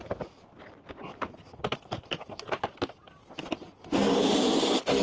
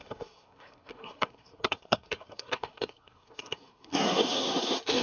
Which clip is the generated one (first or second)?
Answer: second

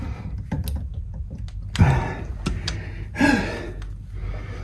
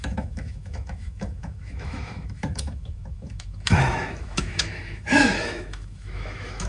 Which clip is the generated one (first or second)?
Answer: second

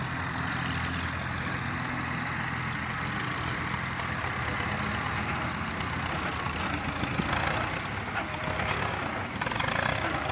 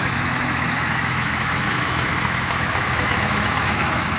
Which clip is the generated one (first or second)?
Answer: second